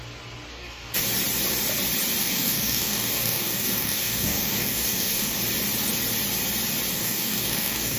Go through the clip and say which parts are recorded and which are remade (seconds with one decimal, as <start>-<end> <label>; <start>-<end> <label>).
0.0-0.5 recorded; 0.5-1.0 remade; 1.0-2.2 recorded; 2.2-5.4 remade; 5.4-6.9 recorded; 6.9-8.0 remade